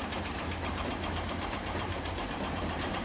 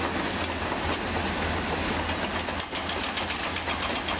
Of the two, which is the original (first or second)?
second